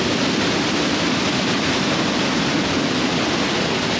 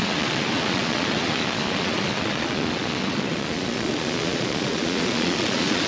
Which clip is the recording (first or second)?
first